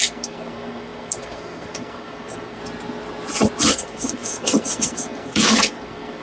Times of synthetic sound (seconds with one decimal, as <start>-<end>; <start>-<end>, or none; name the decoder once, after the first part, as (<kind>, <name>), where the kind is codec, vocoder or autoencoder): 0.0-2.6 (codec, SNAC); 3.7-6.2